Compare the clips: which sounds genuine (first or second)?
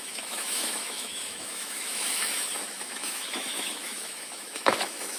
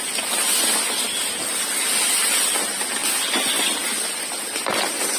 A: second